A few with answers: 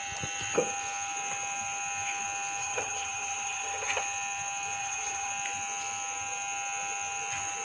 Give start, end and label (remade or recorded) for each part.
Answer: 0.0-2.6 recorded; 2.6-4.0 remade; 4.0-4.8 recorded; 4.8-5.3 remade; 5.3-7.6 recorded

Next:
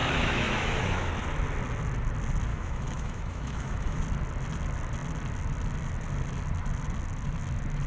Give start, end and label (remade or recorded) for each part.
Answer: 0.0-1.1 remade; 1.1-2.5 recorded; 2.5-4.0 remade; 4.0-7.9 recorded

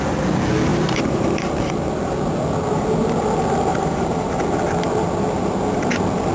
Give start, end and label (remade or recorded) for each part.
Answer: 0.0-0.7 recorded; 0.7-1.7 remade; 1.7-3.7 recorded; 3.7-4.4 remade; 4.4-6.3 recorded

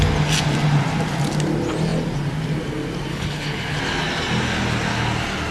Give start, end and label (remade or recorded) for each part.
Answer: 0.0-3.1 recorded; 3.1-3.8 remade; 3.8-5.5 recorded